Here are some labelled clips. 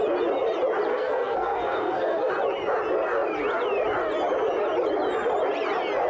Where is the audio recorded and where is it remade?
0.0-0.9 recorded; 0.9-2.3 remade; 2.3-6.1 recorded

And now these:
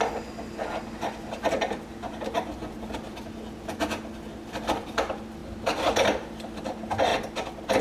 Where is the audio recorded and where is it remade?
0.0-7.8 recorded